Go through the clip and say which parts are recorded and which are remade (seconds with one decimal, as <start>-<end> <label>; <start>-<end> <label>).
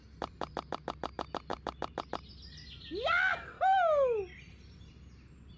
0.0-5.6 recorded